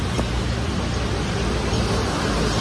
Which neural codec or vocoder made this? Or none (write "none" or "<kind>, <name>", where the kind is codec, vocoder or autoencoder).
none